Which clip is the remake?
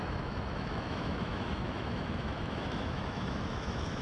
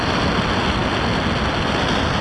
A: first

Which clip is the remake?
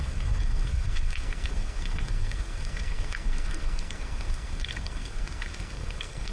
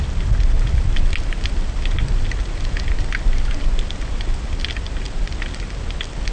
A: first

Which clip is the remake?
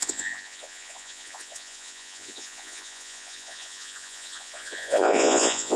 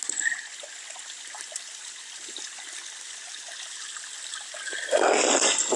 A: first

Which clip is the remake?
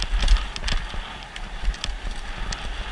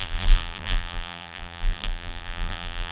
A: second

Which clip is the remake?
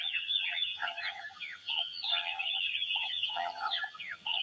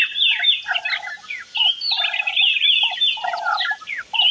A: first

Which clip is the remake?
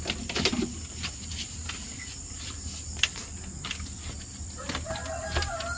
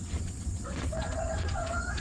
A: second